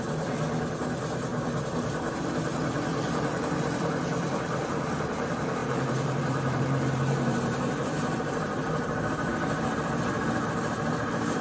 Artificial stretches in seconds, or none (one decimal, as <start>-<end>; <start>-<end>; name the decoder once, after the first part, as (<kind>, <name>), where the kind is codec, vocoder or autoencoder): 0.0-1.3 (vocoder, BigVGAN v2); 1.8-11.4